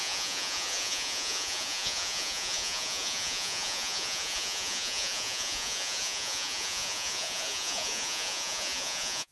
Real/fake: fake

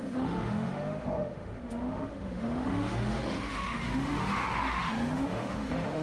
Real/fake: fake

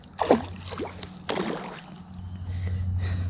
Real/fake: real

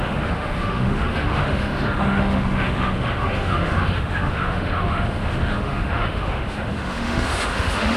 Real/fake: fake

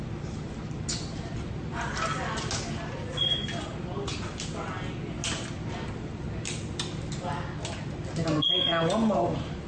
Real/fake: real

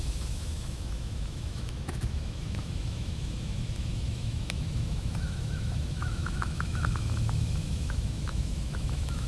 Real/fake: fake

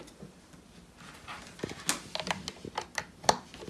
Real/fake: real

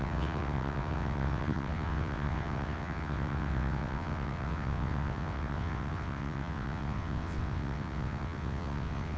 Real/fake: fake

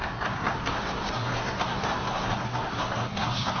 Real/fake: fake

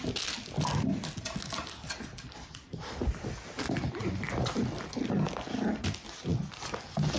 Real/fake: real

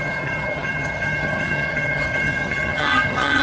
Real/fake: fake